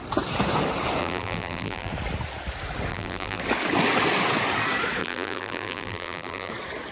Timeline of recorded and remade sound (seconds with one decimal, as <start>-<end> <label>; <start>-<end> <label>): 0.0-1.0 recorded; 1.0-1.9 remade; 1.9-2.9 recorded; 2.9-3.4 remade; 3.4-5.0 recorded; 5.0-6.5 remade; 6.5-6.9 recorded